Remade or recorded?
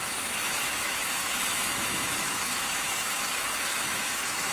remade